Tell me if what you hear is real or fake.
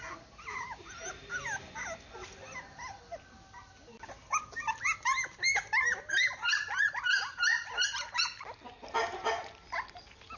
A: real